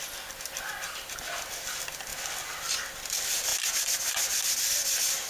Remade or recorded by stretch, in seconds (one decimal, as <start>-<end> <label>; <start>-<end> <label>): 0.0-5.3 recorded